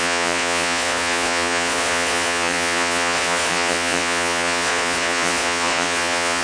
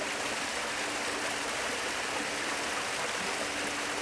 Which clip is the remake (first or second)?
first